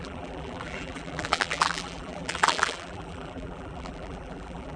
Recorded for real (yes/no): no